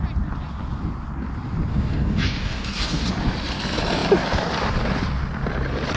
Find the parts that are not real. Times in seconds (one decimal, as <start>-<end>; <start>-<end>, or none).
1.7-3.1